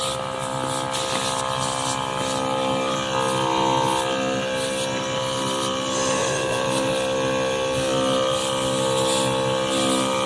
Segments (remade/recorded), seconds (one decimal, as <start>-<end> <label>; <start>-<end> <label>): 0.0-6.2 recorded; 6.2-6.9 remade; 6.9-10.3 recorded